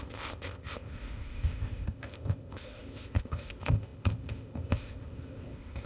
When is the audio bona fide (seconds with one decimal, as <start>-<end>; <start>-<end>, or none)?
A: none